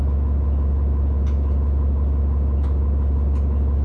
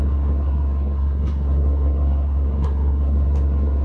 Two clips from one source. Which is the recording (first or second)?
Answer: first